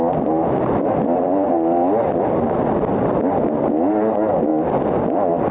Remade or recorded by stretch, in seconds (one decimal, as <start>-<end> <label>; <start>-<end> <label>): 0.0-5.5 recorded